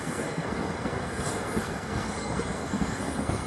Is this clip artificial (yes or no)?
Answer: yes